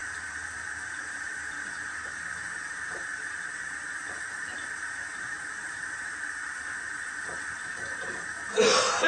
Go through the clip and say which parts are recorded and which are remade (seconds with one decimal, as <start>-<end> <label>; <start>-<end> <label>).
0.0-4.0 remade; 4.0-4.5 recorded; 4.5-6.9 remade; 6.9-9.1 recorded